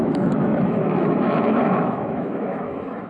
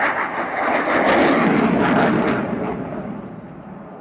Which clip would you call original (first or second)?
second